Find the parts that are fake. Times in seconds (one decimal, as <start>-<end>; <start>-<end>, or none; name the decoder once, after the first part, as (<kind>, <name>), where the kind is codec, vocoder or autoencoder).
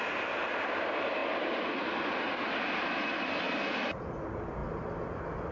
none